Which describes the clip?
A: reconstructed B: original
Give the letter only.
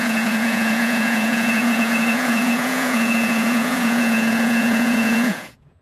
A